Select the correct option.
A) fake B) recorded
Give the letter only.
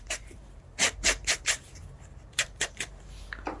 A